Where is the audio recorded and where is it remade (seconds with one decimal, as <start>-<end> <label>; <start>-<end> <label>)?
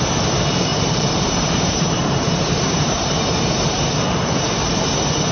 0.0-0.7 recorded; 0.7-3.9 remade; 3.9-5.3 recorded